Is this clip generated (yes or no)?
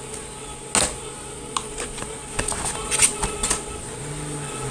no